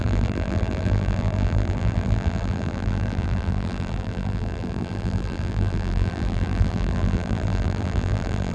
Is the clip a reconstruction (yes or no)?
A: yes